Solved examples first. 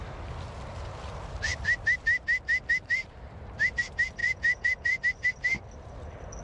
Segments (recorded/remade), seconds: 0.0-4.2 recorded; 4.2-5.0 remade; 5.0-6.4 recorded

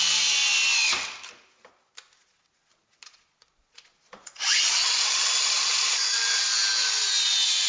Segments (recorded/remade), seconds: 0.0-2.2 recorded; 2.2-6.0 remade; 6.0-7.7 recorded

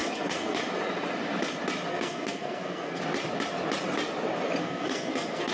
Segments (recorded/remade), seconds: 0.0-0.6 remade; 0.6-1.9 recorded; 1.9-3.0 remade; 3.0-4.6 recorded; 4.6-5.5 remade

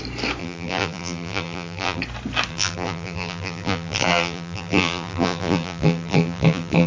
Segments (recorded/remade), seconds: 0.0-0.4 recorded; 0.4-2.0 remade; 2.0-2.5 recorded; 2.5-6.9 remade